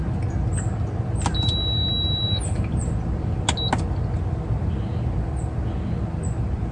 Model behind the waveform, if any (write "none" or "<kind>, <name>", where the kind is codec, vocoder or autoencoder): none